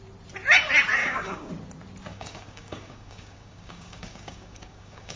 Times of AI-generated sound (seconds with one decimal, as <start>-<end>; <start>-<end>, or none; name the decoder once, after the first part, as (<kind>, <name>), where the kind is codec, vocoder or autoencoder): 1.0-1.5 (codec, DAC); 2.1-5.2